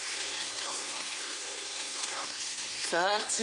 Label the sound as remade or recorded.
remade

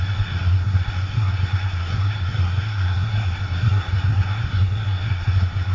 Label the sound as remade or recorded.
remade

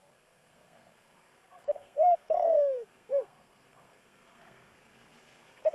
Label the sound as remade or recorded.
remade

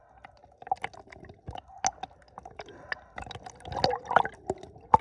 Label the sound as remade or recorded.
recorded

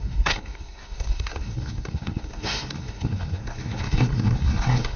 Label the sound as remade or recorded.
remade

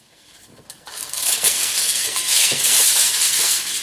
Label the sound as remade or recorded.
remade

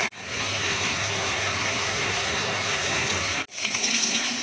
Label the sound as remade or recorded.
remade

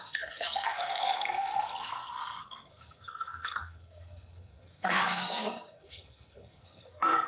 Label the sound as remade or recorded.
remade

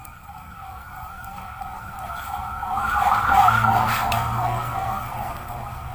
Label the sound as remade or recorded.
remade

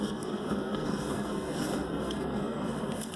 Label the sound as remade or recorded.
remade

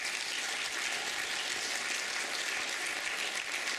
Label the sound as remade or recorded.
recorded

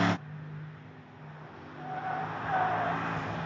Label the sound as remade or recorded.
recorded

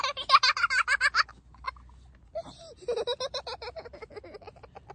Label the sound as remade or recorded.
recorded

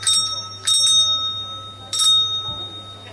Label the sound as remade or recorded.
recorded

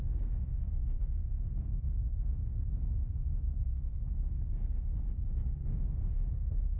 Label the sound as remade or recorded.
remade